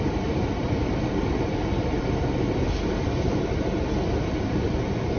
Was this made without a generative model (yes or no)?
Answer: no